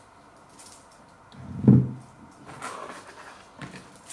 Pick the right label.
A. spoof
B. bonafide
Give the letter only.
B